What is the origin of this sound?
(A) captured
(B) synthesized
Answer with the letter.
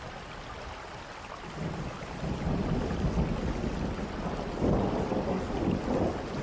A